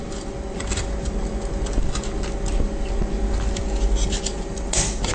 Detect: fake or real real